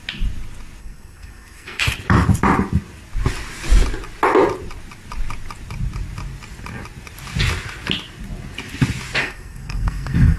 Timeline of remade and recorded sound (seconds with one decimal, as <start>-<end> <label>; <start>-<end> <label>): 0.0-0.8 recorded; 0.8-1.8 remade; 1.8-9.2 recorded; 9.2-10.4 remade